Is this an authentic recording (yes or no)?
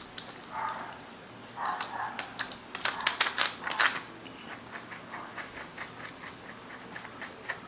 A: yes